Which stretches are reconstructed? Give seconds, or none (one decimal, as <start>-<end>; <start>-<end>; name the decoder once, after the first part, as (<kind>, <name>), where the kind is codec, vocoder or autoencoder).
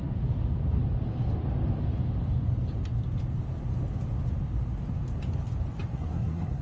5.9-6.6 (codec, SNAC)